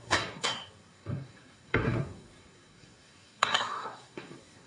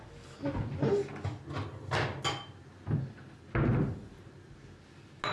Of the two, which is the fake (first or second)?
first